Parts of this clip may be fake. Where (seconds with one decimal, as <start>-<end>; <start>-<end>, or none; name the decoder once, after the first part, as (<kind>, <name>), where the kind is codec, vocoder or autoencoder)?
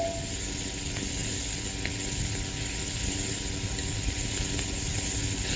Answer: none